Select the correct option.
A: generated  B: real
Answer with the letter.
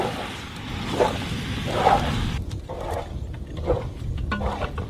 B